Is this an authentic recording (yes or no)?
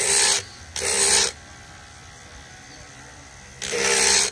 yes